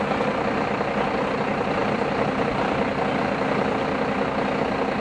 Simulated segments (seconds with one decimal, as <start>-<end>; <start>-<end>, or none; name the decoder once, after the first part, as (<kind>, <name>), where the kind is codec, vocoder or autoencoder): none